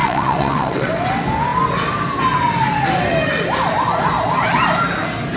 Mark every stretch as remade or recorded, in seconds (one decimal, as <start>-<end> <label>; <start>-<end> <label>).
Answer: 0.0-0.9 remade; 0.9-5.4 recorded